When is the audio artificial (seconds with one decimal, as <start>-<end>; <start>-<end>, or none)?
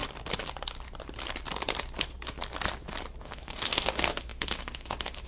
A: 3.2-5.3